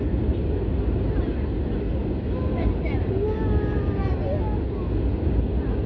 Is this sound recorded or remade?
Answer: recorded